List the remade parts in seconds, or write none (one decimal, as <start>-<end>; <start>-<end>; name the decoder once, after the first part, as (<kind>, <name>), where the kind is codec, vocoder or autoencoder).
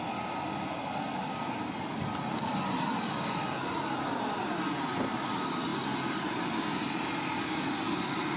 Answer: none